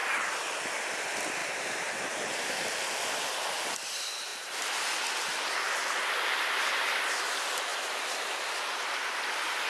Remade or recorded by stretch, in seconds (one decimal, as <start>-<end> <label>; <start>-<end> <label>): 0.0-1.4 recorded; 1.4-2.8 remade; 2.8-9.7 recorded